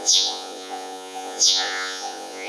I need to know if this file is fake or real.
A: fake